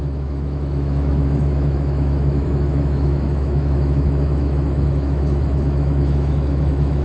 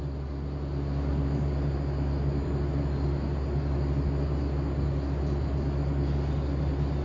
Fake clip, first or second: first